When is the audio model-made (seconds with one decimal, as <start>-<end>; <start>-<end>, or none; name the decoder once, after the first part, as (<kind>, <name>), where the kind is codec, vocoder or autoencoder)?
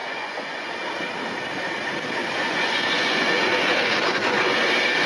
0.0-0.7 (vocoder, Vocos); 2.2-4.6